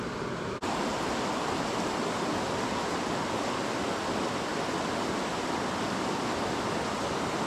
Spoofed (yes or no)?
no